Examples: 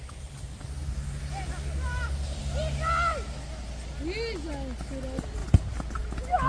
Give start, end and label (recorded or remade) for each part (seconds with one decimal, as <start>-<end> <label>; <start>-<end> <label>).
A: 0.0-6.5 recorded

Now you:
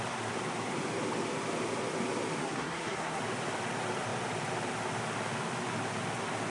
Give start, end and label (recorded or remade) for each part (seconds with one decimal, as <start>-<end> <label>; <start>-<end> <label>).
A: 0.0-2.4 recorded; 2.4-3.2 remade; 3.2-6.5 recorded

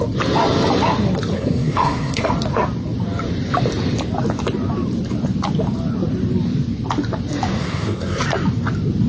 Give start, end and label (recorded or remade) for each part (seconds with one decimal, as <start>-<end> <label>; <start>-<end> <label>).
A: 0.0-1.3 recorded; 1.3-2.3 remade; 2.3-7.6 recorded; 7.6-8.2 remade; 8.2-9.1 recorded

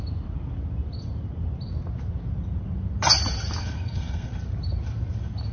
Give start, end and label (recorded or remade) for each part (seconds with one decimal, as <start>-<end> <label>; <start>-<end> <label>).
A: 0.0-3.6 recorded; 3.6-4.3 remade; 4.3-5.5 recorded

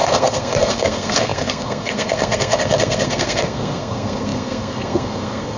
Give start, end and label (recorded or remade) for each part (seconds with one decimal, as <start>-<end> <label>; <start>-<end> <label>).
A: 0.0-5.6 remade

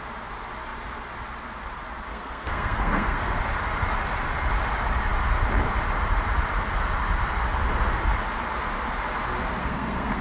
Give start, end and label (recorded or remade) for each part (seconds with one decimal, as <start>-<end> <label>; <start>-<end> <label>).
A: 0.0-2.1 recorded; 2.1-3.4 remade; 3.4-9.6 recorded; 9.6-10.2 remade

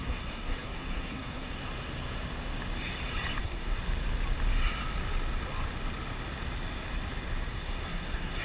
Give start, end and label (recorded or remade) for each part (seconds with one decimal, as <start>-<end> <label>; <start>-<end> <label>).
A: 0.0-1.6 remade; 1.6-3.4 recorded; 3.4-3.8 remade; 3.8-7.5 recorded; 7.5-8.4 remade